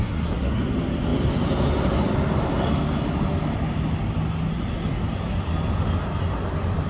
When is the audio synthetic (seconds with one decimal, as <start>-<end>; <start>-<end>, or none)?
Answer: 0.0-0.6